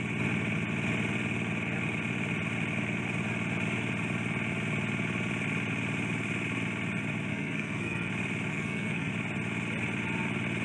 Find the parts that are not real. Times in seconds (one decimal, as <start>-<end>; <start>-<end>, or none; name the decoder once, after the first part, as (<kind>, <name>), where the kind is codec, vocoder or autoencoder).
7.3-8.1 (codec, SNAC); 8.5-9.1

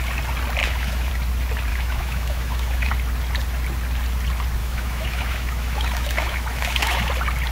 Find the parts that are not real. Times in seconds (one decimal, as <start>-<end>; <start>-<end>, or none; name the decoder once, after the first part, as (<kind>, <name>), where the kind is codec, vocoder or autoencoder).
0.6-1.1 (autoencoder, DAC-VAE); 1.7-2.9; 4.6-7.1

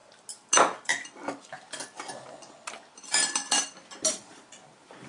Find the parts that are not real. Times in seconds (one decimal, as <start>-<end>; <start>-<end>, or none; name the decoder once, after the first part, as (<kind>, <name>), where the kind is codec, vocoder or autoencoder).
0.5-0.9 (vocoder, BigVGAN v2); 3.0-5.1

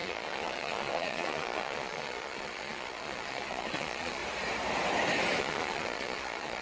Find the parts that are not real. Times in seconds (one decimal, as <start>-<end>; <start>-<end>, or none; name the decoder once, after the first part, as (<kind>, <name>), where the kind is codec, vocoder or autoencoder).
0.0-4.2 (vocoder, Vocos); 5.4-6.6

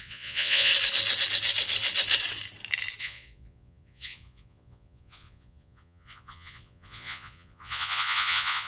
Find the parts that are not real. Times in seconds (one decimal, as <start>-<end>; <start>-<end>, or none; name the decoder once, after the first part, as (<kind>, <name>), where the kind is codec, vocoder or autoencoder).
0.0-0.7 (vocoder, Vocos); 3.0-8.7

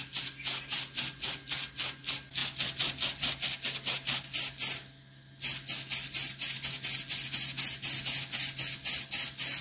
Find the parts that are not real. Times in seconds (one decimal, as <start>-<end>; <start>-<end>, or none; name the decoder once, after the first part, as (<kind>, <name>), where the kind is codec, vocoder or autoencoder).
none

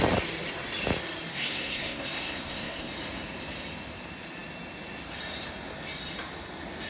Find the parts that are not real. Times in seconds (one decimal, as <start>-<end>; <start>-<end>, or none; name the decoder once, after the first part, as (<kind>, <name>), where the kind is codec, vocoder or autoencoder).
1.3-2.9 (codec, SNAC)

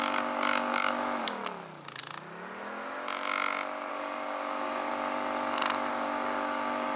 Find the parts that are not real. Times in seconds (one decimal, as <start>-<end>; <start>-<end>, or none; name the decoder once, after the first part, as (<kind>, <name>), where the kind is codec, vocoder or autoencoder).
0.0-1.4 (codec, DAC); 3.9-4.9; 5.9-7.0